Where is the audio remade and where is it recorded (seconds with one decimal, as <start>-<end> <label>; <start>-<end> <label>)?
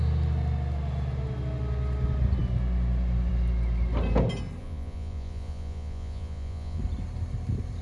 0.0-4.6 recorded; 4.6-6.8 remade; 6.8-7.8 recorded